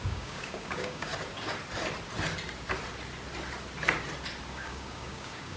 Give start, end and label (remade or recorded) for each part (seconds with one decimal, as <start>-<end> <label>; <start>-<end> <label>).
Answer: 0.0-1.1 remade; 1.1-4.5 recorded; 4.5-5.6 remade